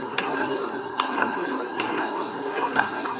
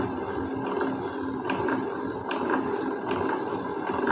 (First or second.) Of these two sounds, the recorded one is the second